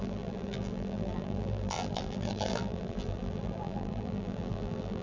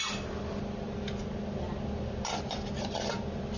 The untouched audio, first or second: second